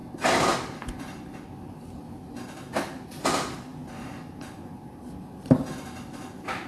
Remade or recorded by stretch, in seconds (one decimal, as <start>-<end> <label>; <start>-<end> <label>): 0.0-6.7 recorded